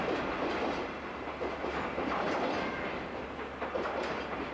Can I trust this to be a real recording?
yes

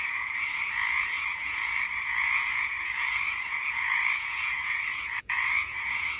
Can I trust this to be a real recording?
no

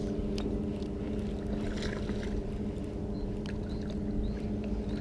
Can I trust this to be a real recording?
yes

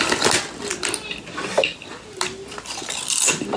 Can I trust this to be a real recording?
yes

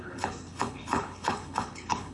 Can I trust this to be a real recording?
no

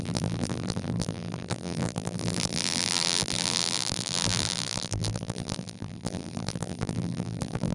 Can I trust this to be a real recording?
no